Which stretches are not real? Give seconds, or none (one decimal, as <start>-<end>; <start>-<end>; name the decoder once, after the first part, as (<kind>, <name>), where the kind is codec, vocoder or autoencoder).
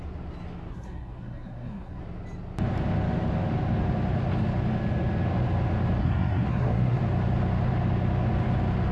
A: 0.7-2.0 (codec, SNAC); 6.0-7.0